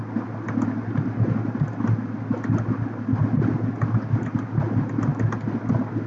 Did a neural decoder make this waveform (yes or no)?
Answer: no